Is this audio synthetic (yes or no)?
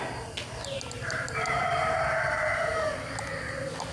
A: no